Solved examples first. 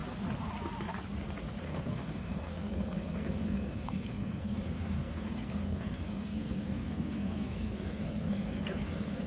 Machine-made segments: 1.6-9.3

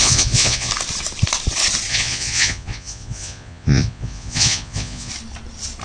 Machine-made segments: 0.0-0.7; 1.9-5.1

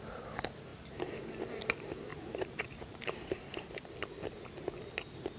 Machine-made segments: 0.7-1.3; 2.1-3.2

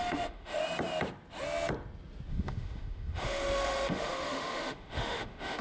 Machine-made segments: 0.0-0.6; 2.3-5.6

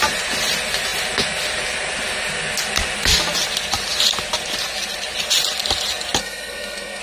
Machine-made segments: 6.2-7.0

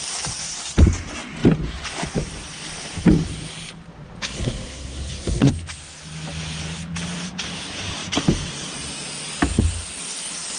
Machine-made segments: 4.2-5.5